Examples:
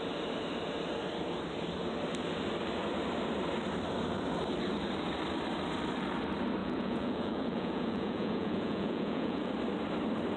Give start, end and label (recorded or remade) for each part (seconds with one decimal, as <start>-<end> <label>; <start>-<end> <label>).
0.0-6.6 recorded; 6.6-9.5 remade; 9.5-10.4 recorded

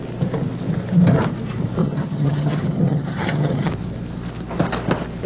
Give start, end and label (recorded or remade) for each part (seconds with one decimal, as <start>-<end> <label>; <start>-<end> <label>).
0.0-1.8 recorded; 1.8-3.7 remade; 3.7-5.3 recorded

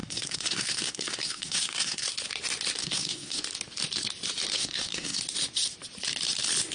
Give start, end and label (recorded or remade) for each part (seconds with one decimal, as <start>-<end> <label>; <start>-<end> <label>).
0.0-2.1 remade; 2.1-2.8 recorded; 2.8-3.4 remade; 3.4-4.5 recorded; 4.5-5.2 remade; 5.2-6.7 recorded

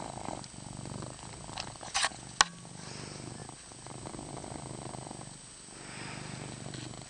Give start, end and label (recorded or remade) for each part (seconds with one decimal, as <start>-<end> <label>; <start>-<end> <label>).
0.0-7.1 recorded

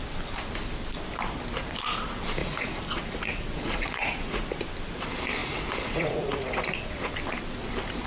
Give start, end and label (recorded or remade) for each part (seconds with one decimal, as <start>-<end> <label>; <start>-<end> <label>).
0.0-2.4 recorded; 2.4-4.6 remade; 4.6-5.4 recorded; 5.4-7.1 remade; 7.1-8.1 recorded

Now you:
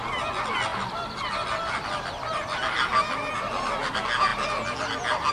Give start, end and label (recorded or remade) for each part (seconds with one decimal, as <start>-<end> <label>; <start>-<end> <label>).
0.0-5.3 recorded